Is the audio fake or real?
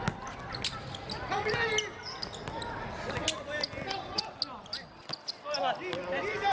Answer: real